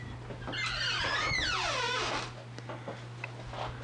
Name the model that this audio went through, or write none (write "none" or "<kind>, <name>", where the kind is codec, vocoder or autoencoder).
none